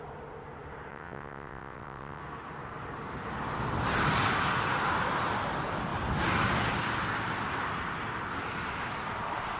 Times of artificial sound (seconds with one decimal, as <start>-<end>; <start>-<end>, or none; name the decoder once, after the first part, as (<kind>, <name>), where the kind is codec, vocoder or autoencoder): 0.9-2.2 (vocoder, WaveNeXt)